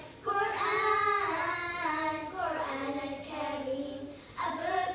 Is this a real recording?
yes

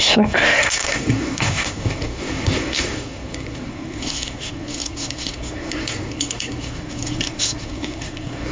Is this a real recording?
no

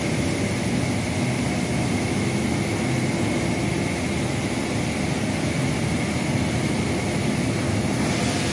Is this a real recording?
yes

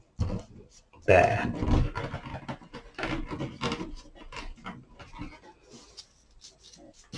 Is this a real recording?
yes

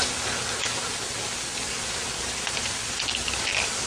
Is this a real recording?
yes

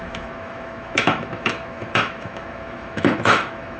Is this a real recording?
no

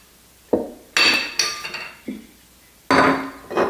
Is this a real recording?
yes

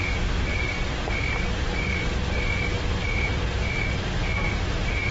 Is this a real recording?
yes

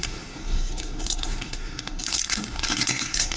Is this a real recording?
no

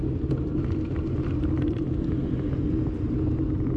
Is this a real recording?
yes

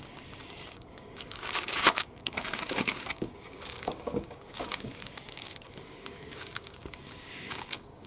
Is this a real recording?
no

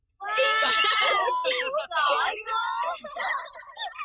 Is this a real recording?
no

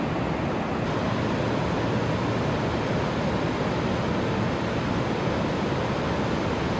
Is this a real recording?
yes